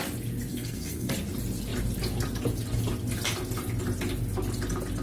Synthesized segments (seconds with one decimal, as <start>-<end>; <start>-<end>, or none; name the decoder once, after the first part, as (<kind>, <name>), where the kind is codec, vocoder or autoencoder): 0.5-1.1 (codec, SNAC)